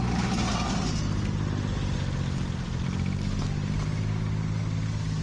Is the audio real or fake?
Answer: real